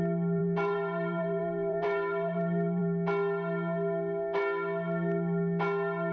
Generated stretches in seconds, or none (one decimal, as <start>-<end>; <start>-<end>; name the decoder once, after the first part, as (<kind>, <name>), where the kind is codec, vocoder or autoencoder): 0.4-2.8 (vocoder, BigVGAN v2)